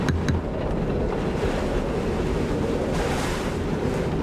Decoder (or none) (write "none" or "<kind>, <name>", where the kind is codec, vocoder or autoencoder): none